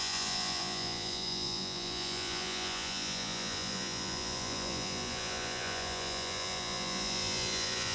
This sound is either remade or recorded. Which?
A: remade